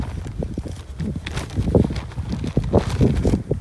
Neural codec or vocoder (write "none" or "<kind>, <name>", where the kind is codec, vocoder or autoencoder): none